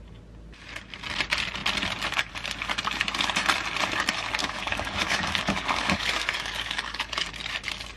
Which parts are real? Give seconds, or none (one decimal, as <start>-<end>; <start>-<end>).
0.0-4.4; 7.3-8.0